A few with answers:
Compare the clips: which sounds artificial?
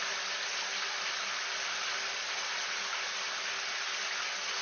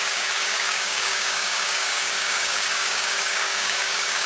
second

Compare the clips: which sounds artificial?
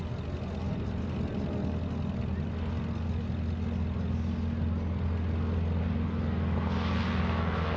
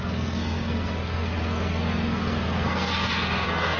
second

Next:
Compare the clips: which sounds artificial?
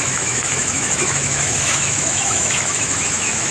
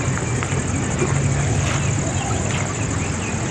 first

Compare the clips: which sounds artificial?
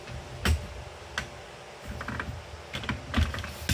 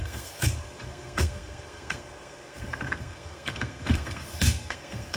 second